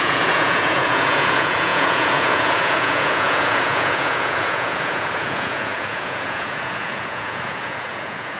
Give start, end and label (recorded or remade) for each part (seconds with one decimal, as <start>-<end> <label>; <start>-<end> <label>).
0.0-8.4 remade

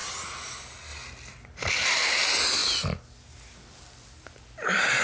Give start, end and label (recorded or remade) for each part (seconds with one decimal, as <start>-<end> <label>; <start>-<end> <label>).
0.0-5.0 recorded

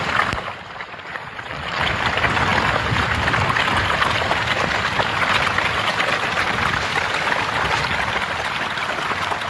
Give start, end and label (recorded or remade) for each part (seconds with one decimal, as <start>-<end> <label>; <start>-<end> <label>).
0.0-1.1 recorded; 1.1-1.8 remade; 1.8-9.5 recorded

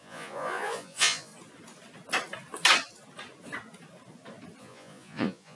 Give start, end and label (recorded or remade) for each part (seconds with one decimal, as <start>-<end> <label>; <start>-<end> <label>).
0.0-1.3 remade; 1.3-4.6 recorded; 4.6-5.5 remade

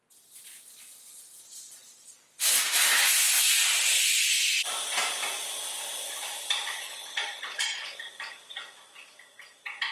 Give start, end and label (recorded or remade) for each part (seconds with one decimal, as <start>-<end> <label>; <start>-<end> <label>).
0.0-9.9 recorded

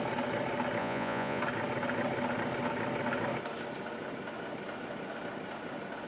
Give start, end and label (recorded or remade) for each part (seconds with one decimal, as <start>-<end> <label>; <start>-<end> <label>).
0.0-0.8 recorded; 0.8-1.4 remade; 1.4-6.1 recorded

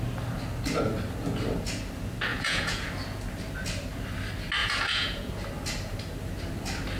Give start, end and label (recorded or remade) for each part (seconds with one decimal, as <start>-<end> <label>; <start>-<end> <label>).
0.0-2.3 recorded; 2.3-2.9 remade; 2.9-4.6 recorded; 4.6-5.3 remade; 5.3-7.0 recorded